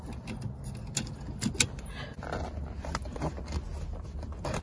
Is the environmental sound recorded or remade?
recorded